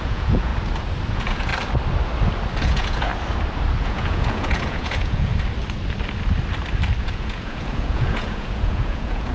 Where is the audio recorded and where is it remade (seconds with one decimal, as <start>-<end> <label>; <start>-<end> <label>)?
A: 0.0-0.5 remade; 0.5-1.1 recorded; 1.1-1.5 remade; 1.5-2.6 recorded; 2.6-3.1 remade; 3.1-3.8 recorded; 3.8-5.3 remade; 5.3-7.0 recorded; 7.0-9.3 remade